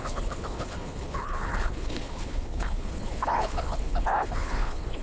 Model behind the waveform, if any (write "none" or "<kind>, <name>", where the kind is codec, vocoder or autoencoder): codec, HILCodec